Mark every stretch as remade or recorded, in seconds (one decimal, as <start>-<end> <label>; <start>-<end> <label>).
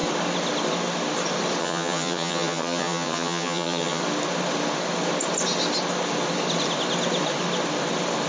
0.0-1.6 recorded; 1.6-4.0 remade; 4.0-8.3 recorded